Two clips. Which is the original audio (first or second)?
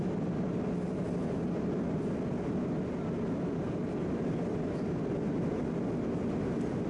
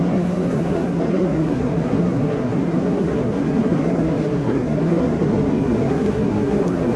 first